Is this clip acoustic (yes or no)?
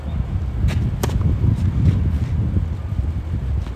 yes